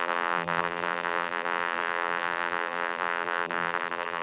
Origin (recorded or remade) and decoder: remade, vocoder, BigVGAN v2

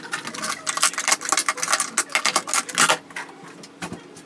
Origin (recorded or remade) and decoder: recorded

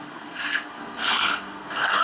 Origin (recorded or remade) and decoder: remade, codec, SNAC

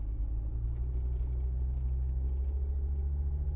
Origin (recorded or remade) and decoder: recorded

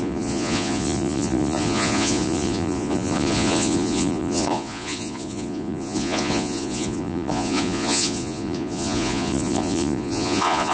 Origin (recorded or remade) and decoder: remade, vocoder, Vocos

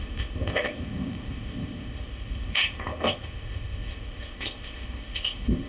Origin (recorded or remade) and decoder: remade, codec, ZipCodec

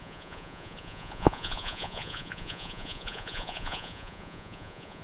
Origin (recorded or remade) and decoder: remade, vocoder, Vocos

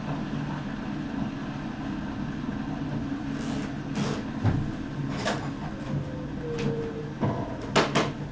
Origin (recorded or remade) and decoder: recorded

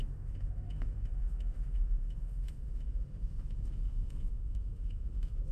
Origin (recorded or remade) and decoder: remade, autoencoder, DAC-VAE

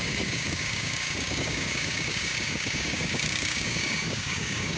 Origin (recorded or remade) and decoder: remade, codec, DAC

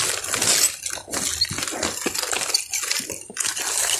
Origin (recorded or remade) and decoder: recorded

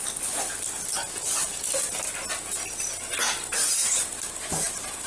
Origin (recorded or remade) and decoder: recorded